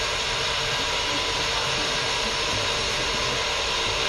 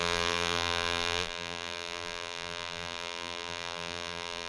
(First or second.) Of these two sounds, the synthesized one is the second